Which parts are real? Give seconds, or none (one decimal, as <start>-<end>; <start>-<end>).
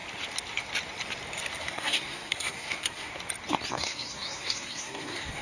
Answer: 0.0-1.6; 3.1-3.7